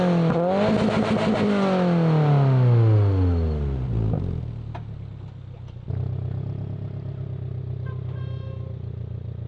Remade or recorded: recorded